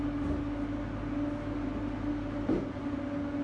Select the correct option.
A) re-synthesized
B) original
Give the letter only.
B